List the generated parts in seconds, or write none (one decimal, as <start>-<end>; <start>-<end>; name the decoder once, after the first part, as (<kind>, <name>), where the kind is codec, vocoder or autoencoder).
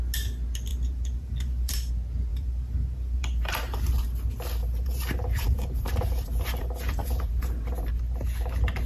0.7-1.9 (vocoder, BigVGAN v2); 2.3-3.9; 4.6-7.9